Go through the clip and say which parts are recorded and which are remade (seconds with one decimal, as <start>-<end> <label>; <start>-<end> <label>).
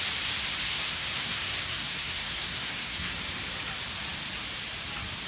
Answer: 0.0-0.7 recorded; 0.7-3.1 remade; 3.1-5.3 recorded